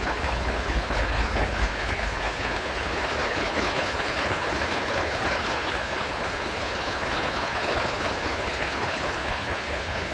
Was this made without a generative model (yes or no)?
no